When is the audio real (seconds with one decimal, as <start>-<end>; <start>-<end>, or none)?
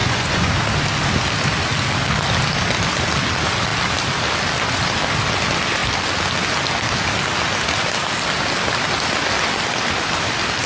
0.5-10.7